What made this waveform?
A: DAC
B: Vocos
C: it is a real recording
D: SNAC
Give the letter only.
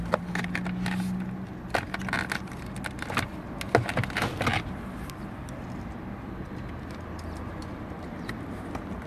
C